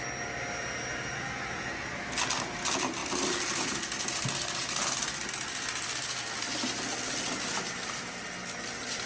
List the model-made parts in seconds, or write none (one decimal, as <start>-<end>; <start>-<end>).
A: none